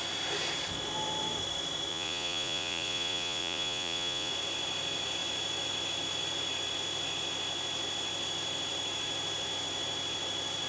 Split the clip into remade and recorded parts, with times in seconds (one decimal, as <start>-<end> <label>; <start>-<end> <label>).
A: 0.0-1.9 recorded; 1.9-4.3 remade; 4.3-10.7 recorded